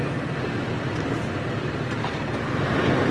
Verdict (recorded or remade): recorded